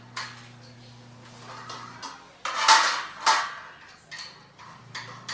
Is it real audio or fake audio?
real